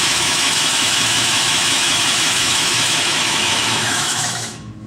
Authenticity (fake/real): fake